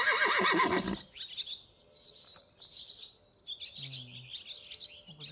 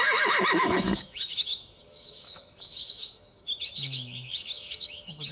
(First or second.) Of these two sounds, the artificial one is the second